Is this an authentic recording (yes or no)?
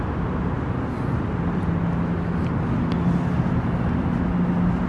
yes